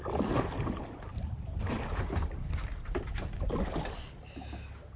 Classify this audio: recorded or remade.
recorded